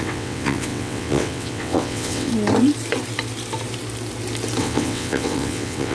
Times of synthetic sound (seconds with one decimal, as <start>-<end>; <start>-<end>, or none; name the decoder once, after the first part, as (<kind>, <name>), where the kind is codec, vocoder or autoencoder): 0.0-2.3 (vocoder, WaveNeXt); 4.6-5.9

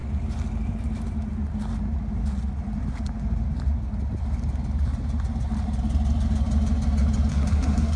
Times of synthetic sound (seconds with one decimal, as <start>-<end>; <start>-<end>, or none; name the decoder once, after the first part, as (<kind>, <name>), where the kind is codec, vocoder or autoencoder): 7.3-8.0 (codec, SNAC)

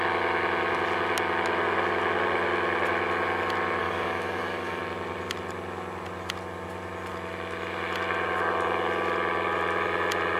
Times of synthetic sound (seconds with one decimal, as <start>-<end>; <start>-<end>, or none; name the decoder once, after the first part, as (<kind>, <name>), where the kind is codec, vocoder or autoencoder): 3.8-4.8 (codec, DAC)

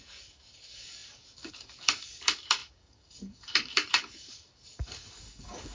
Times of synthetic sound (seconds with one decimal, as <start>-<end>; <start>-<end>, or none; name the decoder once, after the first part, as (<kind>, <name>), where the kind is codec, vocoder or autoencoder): 0.0-5.7 (codec, DAC)

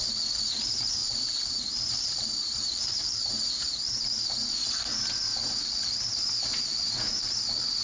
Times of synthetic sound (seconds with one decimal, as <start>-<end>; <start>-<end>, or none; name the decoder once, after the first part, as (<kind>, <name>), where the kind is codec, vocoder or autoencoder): 1.0-3.7 (vocoder, BigVGAN v2)

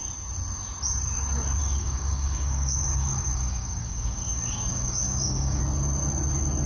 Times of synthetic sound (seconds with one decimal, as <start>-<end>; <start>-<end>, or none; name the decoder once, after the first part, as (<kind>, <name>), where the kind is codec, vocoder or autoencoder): 1.6-5.6 (codec, DAC)